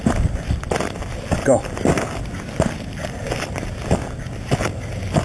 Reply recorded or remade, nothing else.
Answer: recorded